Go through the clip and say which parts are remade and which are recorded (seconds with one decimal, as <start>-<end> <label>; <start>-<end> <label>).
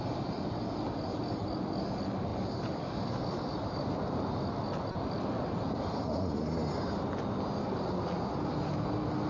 0.0-2.3 recorded; 2.3-3.1 remade; 3.1-9.3 recorded